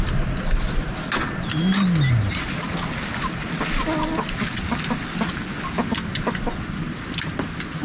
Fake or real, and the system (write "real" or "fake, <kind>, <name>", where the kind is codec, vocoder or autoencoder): real